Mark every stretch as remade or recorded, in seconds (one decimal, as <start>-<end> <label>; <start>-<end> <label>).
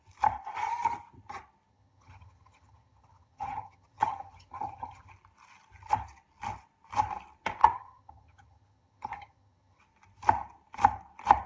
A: 0.0-1.7 recorded; 1.7-5.1 remade; 5.1-7.6 recorded; 7.6-9.8 remade; 9.8-11.5 recorded